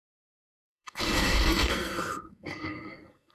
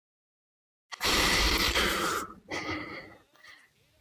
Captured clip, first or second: second